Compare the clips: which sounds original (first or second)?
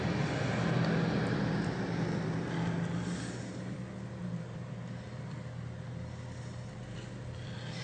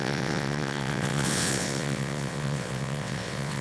first